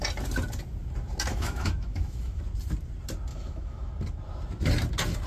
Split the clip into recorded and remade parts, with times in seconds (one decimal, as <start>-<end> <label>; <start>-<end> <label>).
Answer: 0.0-1.3 recorded; 1.3-2.4 remade; 2.4-3.3 recorded; 3.3-3.9 remade; 3.9-5.3 recorded